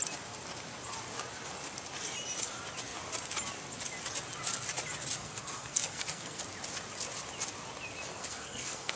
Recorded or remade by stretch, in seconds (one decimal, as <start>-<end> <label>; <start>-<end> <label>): 0.0-5.2 recorded; 5.2-6.4 remade; 6.4-8.1 recorded; 8.1-9.0 remade